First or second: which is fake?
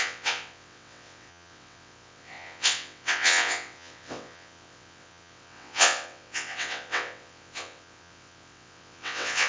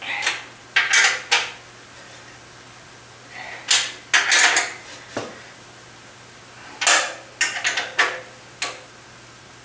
first